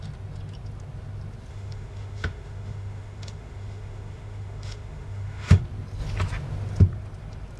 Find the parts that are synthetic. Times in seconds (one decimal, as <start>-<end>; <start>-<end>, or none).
1.5-5.6